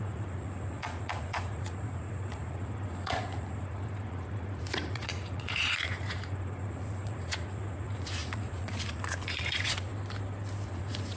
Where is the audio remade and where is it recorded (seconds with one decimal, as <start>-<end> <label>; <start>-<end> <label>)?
0.0-9.9 remade; 9.9-10.7 recorded; 10.7-11.2 remade